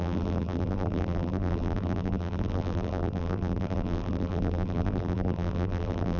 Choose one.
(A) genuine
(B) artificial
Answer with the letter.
B